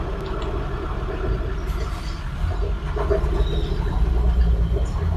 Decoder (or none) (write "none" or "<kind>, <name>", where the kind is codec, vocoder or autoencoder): none